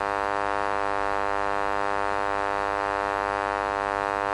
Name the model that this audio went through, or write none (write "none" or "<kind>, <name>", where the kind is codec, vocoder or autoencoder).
none